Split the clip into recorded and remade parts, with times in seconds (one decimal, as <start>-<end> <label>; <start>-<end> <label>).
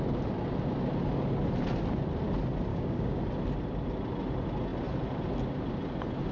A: 0.0-2.7 recorded; 2.7-3.2 remade; 3.2-6.3 recorded